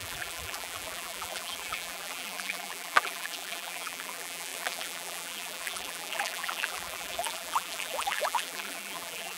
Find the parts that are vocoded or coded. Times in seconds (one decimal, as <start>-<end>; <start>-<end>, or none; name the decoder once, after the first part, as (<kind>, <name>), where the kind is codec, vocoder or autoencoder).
0.0-9.4 (vocoder, BigVGAN v2)